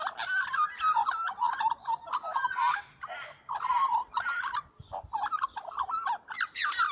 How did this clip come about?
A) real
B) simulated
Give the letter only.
A